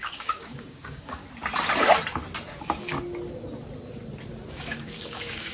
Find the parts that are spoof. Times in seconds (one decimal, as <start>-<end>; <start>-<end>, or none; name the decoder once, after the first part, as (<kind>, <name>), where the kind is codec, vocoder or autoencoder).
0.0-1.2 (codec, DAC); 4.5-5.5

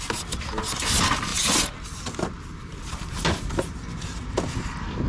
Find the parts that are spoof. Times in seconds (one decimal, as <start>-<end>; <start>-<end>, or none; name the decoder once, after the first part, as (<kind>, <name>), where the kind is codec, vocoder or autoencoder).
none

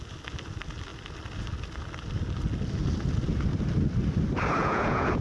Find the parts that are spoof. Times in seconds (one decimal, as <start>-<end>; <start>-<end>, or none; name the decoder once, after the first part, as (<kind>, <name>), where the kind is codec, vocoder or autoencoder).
4.6-5.2 (vocoder, Vocos)